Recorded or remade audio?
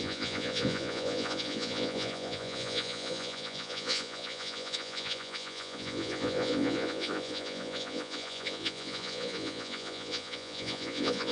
remade